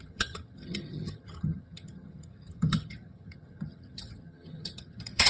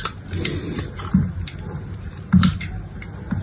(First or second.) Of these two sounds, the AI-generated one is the first